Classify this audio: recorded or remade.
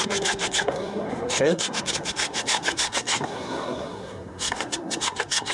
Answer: remade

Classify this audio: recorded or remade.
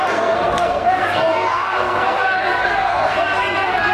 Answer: remade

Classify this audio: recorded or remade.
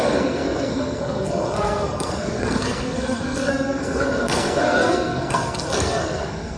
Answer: remade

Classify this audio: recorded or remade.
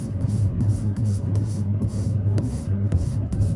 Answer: remade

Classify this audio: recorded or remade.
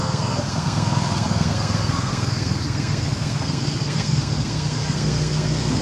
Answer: remade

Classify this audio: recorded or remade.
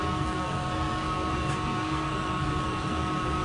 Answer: remade